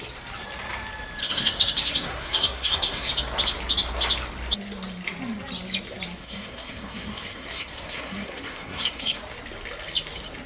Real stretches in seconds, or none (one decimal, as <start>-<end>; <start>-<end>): 0.0-1.2; 3.1-6.2; 9.2-10.5

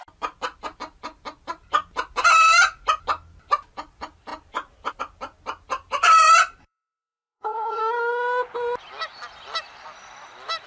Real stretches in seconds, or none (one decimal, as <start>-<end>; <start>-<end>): 0.0-6.6; 7.8-10.7